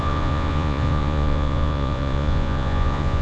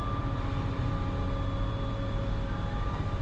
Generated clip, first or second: first